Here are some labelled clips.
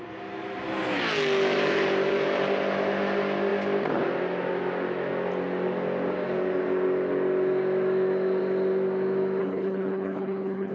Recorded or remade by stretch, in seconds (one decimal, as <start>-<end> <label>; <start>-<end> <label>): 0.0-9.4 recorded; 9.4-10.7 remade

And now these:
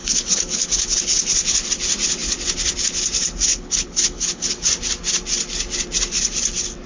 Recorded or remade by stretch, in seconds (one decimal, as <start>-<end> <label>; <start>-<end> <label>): 0.0-1.7 remade; 1.7-3.5 recorded; 3.5-4.7 remade; 4.7-6.9 recorded

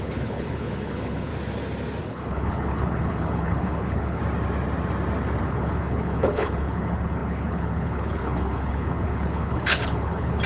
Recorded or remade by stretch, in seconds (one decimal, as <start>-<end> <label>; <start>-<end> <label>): 0.0-1.3 remade; 1.3-2.0 recorded; 2.0-4.2 remade; 4.2-5.4 recorded; 5.4-10.5 remade

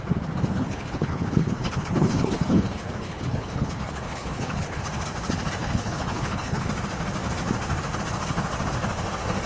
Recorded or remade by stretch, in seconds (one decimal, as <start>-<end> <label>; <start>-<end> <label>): 0.0-0.5 recorded; 0.5-4.8 remade; 4.8-5.6 recorded; 5.6-6.7 remade; 6.7-9.5 recorded

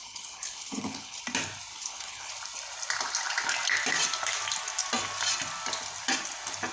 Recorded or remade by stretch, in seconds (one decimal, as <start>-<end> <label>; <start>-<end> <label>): 0.0-1.2 remade; 1.2-1.7 recorded; 1.7-2.3 remade; 2.3-6.7 recorded